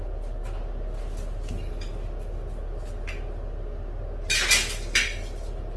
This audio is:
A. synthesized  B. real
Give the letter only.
B